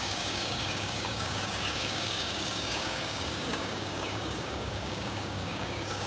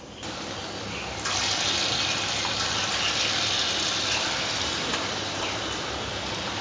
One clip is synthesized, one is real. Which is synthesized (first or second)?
first